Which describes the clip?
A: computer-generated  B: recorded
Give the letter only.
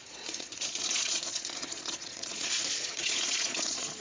A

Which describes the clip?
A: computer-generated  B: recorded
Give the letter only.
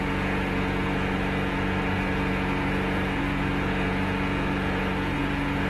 A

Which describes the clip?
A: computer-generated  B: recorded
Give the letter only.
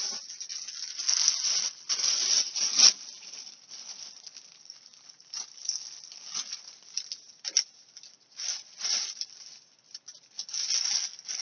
B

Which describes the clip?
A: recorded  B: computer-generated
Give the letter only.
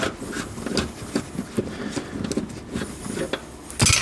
A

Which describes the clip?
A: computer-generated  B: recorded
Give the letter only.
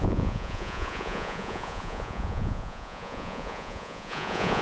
A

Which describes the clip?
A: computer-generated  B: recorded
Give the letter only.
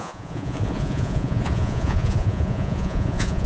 A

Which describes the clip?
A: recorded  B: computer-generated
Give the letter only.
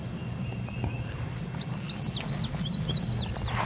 A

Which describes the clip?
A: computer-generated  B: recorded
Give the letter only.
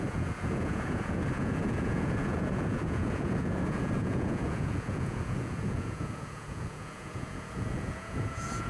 A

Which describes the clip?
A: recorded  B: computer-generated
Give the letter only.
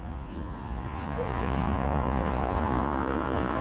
B